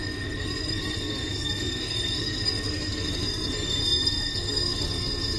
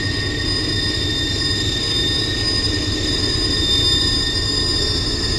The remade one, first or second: first